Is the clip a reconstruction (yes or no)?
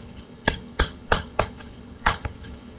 yes